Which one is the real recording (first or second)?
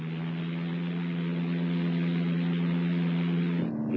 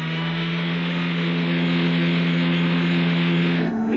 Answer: first